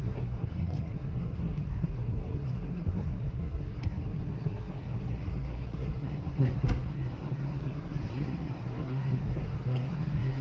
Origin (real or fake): fake